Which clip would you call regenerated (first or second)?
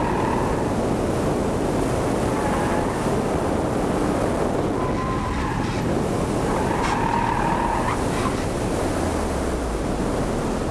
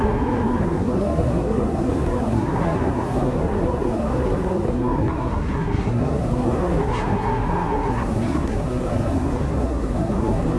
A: second